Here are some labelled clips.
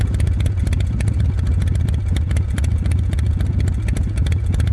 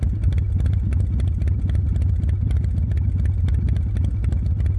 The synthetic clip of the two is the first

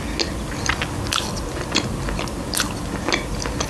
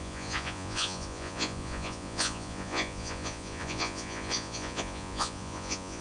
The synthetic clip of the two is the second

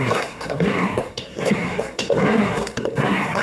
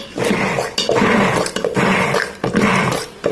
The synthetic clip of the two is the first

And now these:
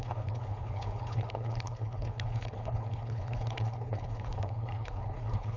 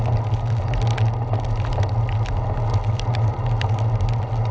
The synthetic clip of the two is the first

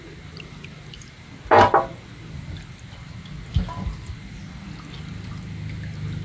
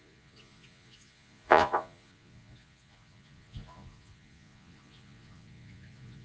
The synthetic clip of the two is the second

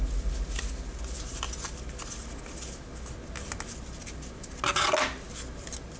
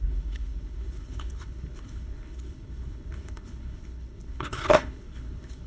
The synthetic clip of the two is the second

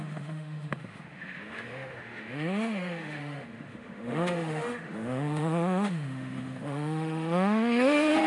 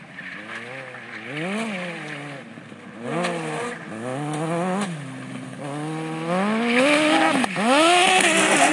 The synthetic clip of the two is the first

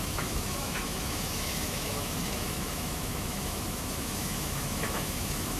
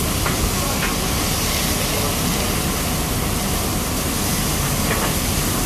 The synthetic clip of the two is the first